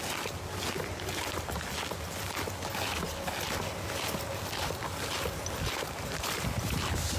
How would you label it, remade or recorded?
recorded